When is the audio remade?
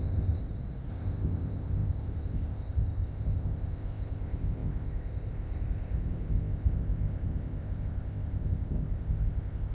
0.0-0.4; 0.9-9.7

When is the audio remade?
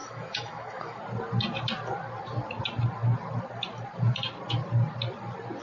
0.0-1.0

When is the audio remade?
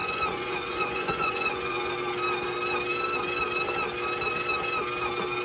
0.0-1.9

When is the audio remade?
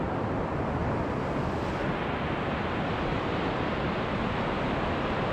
none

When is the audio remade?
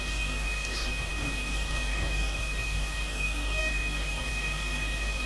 0.0-5.3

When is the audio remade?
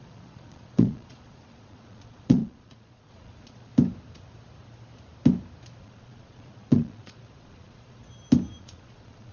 0.0-3.7; 5.8-8.0; 8.6-9.3